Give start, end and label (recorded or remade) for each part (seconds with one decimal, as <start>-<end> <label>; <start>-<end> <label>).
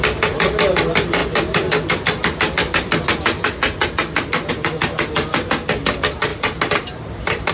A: 0.0-6.3 recorded; 6.3-7.5 remade